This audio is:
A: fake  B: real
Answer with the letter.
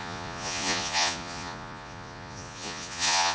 A